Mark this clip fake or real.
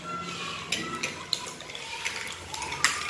real